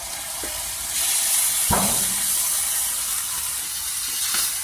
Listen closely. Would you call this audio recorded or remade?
recorded